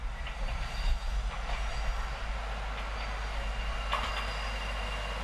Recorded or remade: recorded